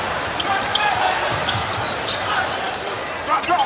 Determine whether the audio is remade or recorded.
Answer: recorded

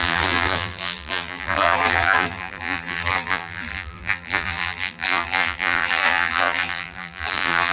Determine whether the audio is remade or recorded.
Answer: remade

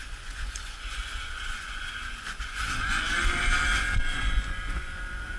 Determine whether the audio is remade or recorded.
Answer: remade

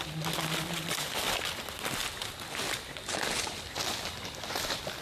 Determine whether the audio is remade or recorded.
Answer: recorded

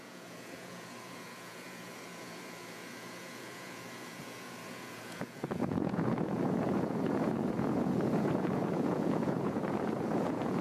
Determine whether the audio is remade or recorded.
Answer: remade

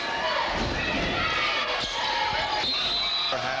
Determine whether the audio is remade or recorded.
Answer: recorded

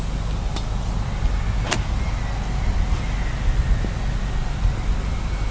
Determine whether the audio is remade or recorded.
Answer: recorded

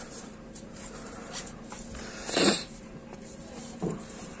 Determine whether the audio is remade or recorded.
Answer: remade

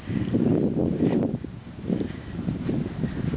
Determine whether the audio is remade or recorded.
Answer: remade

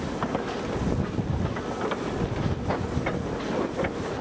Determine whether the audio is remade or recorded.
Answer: recorded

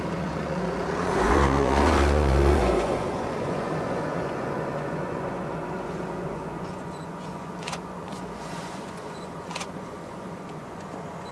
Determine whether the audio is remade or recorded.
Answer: remade